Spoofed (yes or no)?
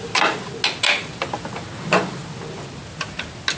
no